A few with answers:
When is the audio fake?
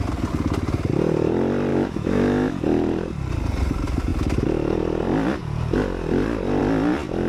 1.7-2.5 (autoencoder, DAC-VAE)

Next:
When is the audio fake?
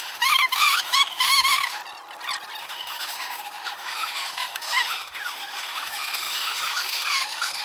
0.0-1.8 (autoencoder, DAC-VAE); 2.6-7.6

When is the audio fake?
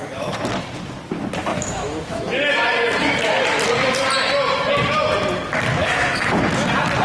1.5-2.3 (autoencoder, DAC-VAE); 5.8-6.4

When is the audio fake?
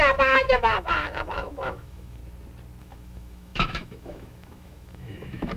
0.0-2.2 (autoencoder, DAC-VAE); 2.8-5.6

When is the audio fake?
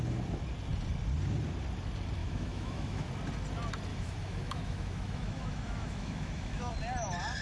2.2-3.1 (autoencoder, DAC-VAE); 3.9-6.7